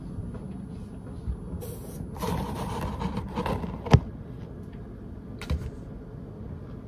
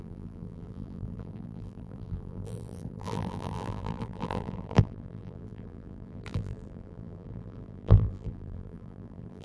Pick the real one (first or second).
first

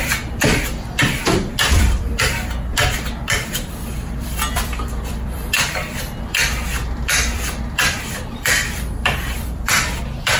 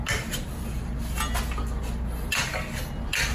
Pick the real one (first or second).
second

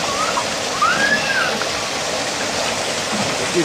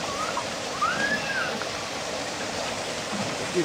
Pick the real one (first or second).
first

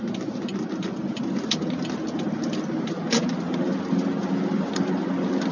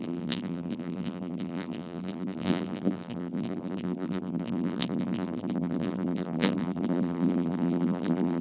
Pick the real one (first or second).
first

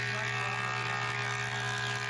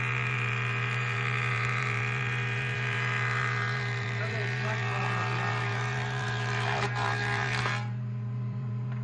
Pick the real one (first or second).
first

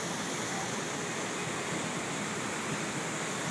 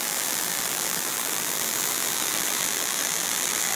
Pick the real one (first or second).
first